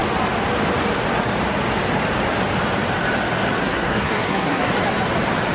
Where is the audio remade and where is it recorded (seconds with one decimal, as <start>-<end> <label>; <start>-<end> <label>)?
0.0-3.6 recorded; 3.6-4.7 remade; 4.7-5.5 recorded